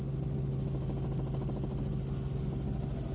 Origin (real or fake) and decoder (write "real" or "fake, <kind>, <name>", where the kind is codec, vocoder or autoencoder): real